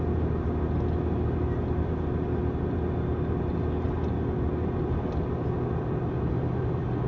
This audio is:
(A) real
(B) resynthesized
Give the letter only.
A